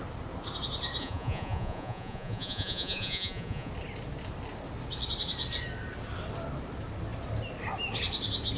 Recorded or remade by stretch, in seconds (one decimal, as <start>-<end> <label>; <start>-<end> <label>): 0.0-1.0 recorded; 1.0-3.7 remade; 3.7-8.6 recorded